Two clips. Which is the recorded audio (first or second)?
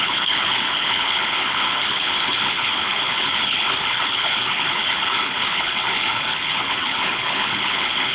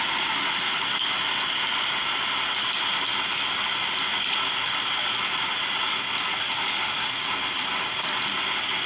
second